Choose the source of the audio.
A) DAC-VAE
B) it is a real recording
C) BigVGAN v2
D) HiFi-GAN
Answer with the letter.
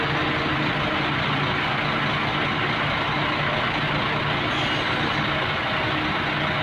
B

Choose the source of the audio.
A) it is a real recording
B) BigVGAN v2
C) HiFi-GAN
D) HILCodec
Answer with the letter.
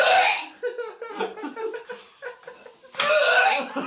A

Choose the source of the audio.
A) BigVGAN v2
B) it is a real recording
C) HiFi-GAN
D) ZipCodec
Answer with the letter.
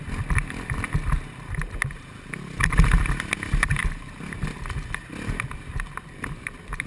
B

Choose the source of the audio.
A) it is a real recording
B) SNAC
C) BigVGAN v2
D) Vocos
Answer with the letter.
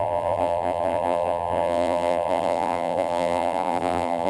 C